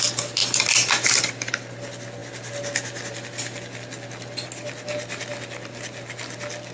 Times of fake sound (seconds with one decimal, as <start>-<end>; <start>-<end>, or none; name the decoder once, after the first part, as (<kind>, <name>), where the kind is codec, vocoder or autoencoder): none